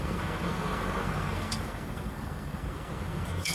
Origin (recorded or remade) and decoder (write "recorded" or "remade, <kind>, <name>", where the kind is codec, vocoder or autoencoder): remade, codec, SNAC